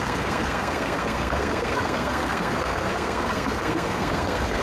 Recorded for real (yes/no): no